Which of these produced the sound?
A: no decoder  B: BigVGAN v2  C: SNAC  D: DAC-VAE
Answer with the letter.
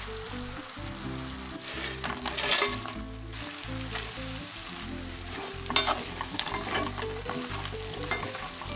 A